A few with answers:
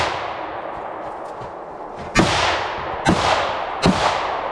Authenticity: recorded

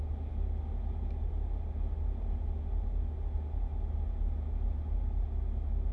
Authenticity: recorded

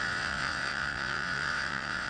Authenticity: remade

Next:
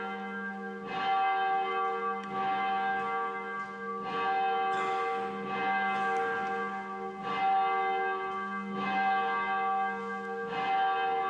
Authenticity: recorded